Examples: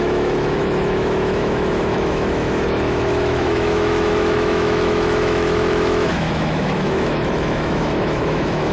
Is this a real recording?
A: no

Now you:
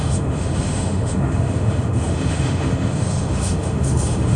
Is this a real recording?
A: no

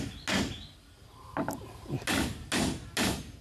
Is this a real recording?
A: yes